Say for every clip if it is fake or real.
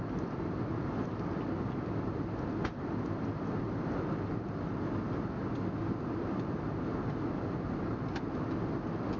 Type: real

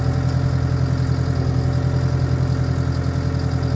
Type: real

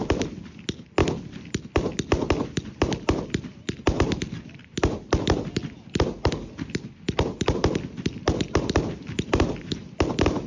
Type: real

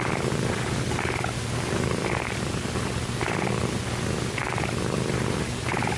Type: real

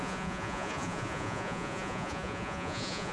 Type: fake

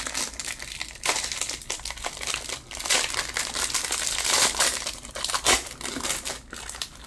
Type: real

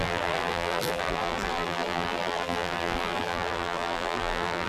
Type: fake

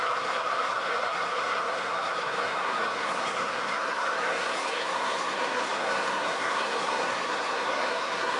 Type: fake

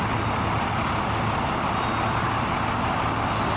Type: real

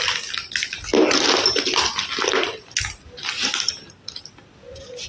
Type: real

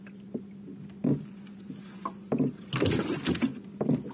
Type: real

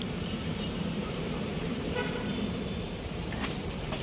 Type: fake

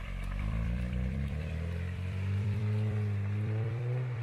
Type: fake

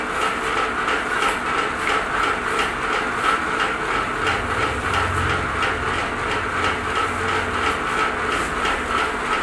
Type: real